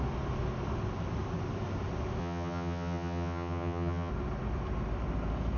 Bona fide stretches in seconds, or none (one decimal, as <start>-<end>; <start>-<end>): 0.0-2.2; 4.1-5.6